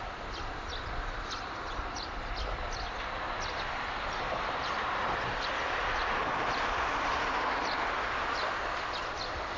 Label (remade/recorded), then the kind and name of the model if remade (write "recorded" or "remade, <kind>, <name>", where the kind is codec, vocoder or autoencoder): recorded